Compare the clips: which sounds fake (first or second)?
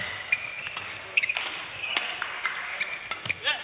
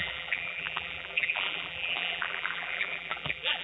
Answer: second